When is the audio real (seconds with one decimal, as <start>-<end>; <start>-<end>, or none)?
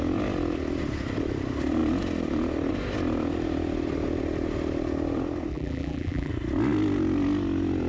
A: 0.0-5.5; 6.3-7.9